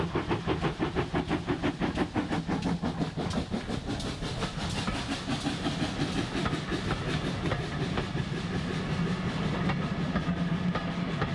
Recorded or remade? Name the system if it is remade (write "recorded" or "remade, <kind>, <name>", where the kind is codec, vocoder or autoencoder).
recorded